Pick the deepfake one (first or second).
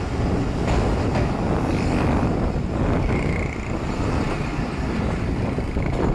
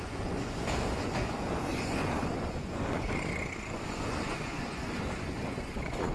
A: second